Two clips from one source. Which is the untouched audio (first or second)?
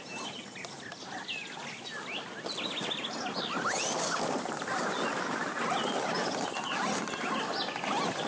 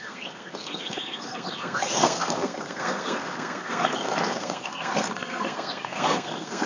first